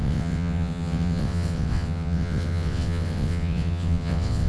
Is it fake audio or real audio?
fake